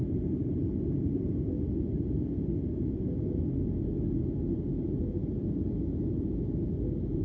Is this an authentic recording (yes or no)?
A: yes